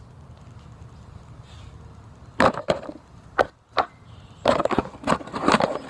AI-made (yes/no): no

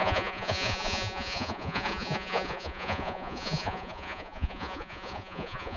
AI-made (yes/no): yes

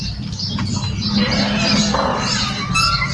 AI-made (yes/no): no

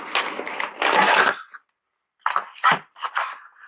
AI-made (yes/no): no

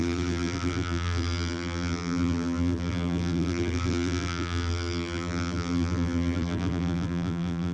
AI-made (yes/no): yes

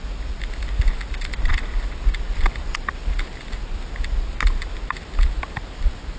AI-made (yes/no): no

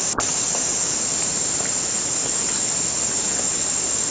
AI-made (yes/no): no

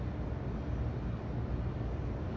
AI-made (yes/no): no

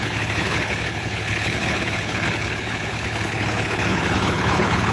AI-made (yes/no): yes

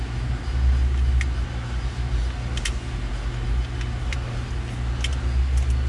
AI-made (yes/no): no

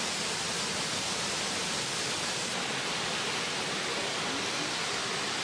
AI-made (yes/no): no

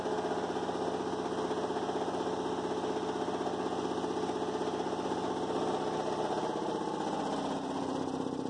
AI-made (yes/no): no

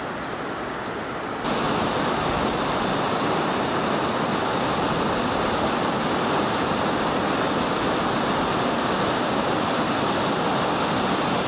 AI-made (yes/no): no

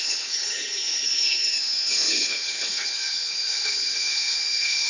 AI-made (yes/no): yes